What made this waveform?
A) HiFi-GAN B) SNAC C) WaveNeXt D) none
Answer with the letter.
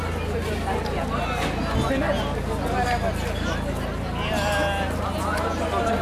D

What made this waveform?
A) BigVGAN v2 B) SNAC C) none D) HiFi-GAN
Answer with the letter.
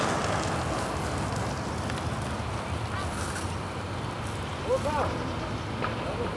C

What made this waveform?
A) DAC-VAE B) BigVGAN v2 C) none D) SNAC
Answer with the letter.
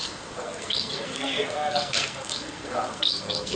D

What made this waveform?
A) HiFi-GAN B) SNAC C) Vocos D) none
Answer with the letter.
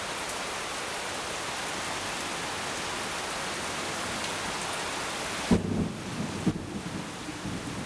D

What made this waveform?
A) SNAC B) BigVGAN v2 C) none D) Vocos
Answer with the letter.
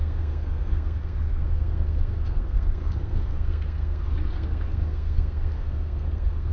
A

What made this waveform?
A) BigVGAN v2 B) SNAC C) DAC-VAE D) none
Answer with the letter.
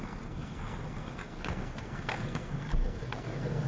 B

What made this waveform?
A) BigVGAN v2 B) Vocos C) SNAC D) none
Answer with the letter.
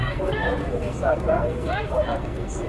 C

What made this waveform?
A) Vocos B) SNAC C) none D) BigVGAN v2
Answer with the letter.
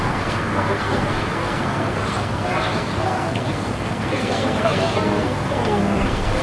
B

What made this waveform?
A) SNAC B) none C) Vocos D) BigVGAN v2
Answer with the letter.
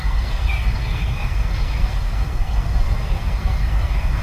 A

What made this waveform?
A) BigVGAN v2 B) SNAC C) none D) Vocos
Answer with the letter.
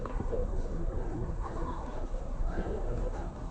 B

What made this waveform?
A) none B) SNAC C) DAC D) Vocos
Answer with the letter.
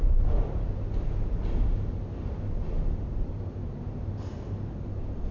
A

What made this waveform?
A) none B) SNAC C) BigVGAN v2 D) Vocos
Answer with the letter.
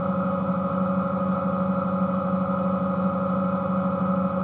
A